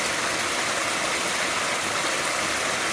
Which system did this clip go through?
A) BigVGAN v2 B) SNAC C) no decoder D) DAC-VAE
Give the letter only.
C